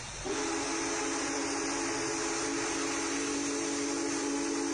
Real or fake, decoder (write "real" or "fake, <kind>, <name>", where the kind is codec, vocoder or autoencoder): real